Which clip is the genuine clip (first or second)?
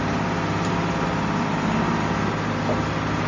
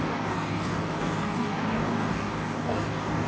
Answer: first